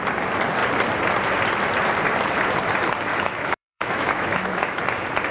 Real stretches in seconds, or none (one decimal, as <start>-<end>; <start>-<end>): 0.0-3.1; 4.8-5.3